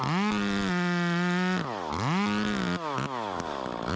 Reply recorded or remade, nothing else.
recorded